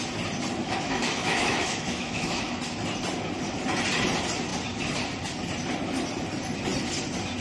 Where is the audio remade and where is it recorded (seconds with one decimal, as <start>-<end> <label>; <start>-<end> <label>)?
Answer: 0.0-0.6 recorded; 0.6-2.6 remade; 2.6-7.4 recorded